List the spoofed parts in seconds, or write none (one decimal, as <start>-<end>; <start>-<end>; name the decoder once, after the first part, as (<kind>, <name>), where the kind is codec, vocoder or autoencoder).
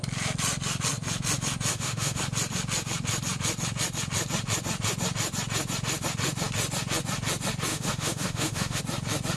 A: 1.7-2.2 (autoencoder, DAC-VAE); 7.7-8.8